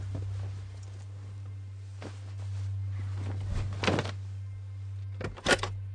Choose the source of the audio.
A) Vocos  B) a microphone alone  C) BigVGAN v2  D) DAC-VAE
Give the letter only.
B